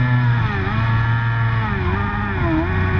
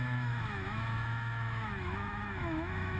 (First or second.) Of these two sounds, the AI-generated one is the second